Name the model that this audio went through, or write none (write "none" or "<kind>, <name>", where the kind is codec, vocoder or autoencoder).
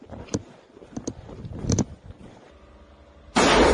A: none